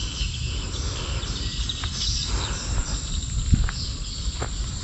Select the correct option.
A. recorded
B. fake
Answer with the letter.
A